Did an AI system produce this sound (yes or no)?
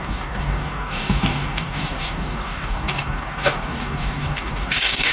yes